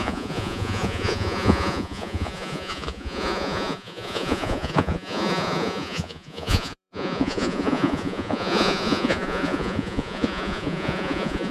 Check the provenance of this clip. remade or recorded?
remade